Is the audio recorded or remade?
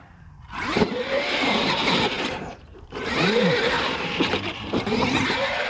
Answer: remade